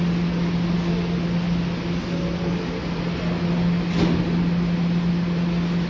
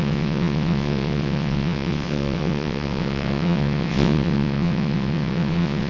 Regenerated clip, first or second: second